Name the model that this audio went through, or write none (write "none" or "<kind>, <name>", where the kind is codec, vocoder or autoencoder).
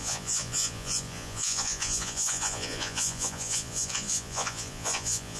vocoder, Vocos